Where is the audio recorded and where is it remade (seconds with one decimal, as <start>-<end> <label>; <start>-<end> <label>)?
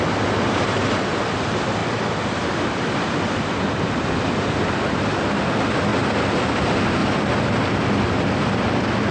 0.0-1.8 recorded; 1.8-5.1 remade; 5.1-5.9 recorded; 5.9-6.5 remade; 6.5-7.0 recorded; 7.0-7.9 remade; 7.9-9.1 recorded